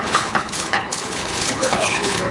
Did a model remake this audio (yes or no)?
yes